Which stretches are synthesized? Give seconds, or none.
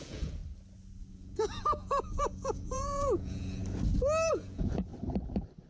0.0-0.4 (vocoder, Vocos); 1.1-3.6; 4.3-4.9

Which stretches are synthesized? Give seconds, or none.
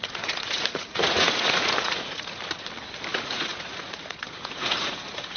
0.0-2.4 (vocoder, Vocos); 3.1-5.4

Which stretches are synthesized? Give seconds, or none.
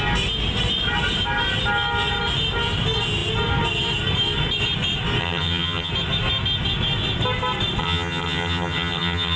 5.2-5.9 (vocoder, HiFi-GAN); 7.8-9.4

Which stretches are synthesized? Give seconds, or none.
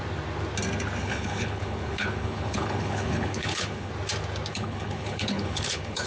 1.0-3.9 (codec, HILCodec); 4.5-6.1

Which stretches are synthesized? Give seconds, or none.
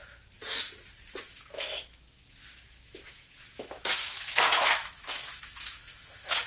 1.2-6.5 (autoencoder, DAC-VAE)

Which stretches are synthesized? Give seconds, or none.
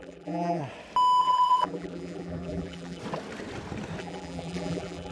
0.0-0.6 (vocoder, BigVGAN v2); 1.2-3.0; 4.0-5.1